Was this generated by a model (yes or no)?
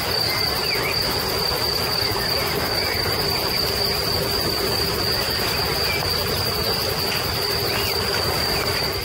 no